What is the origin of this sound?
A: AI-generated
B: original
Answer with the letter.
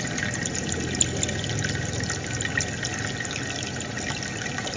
B